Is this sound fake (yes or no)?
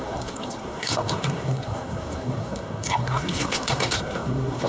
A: yes